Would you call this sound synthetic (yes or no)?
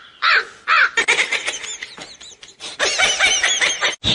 no